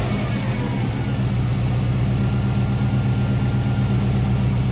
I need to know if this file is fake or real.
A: real